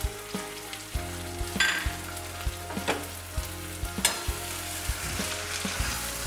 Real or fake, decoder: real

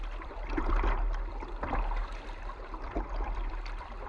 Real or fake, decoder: fake, vocoder, BigVGAN v2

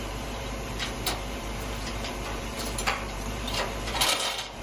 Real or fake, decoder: fake, vocoder, BigVGAN v2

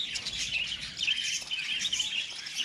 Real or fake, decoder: real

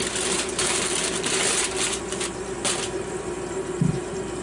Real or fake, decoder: real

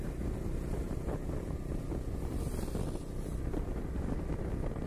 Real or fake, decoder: real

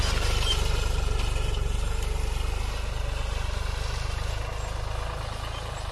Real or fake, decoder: real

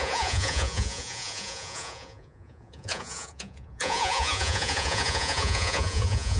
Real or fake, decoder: fake, vocoder, Vocos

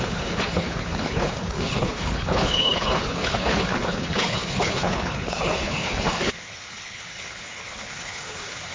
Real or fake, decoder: fake, codec, HILCodec